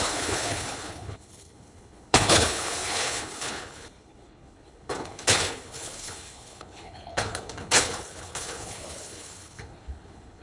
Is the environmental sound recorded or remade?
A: remade